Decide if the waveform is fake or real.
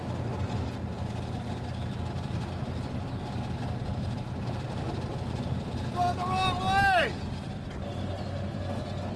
real